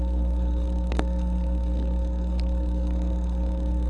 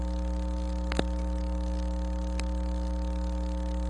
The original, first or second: second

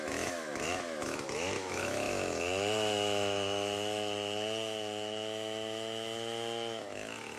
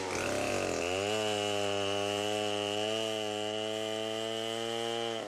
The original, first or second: second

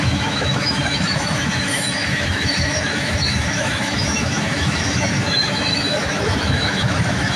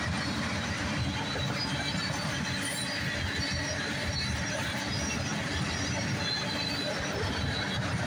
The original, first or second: second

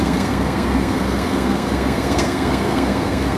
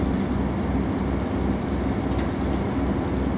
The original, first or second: second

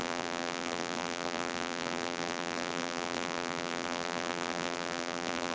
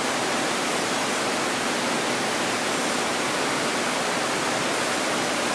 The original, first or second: second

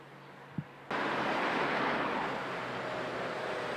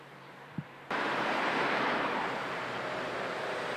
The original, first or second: first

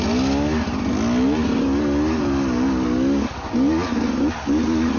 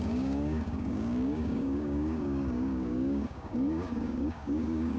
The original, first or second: first